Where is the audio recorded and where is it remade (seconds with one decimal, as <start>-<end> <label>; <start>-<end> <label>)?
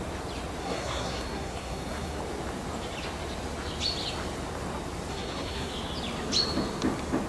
0.0-0.6 recorded; 0.6-2.2 remade; 2.2-5.1 recorded; 5.1-5.7 remade; 5.7-7.3 recorded